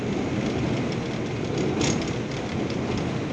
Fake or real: real